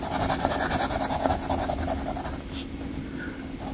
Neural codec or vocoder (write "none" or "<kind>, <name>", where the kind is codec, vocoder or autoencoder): none